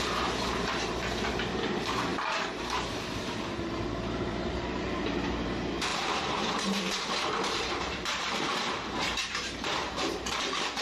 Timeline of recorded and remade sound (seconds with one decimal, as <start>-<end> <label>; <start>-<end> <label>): 0.0-10.8 remade